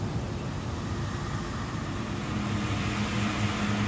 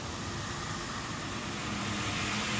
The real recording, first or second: first